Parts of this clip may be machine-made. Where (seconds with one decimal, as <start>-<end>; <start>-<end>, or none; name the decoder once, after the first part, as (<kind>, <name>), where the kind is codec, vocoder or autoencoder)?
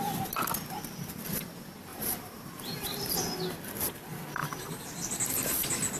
1.9-3.1 (vocoder, BigVGAN v2)